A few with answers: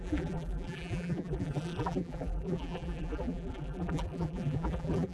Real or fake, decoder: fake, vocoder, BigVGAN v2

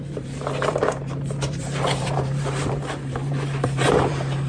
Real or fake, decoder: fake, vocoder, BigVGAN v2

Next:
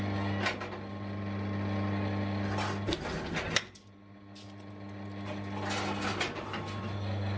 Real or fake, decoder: real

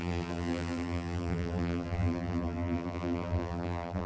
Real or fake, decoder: fake, vocoder, BigVGAN v2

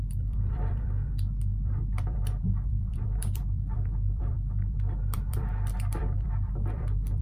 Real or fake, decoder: fake, vocoder, BigVGAN v2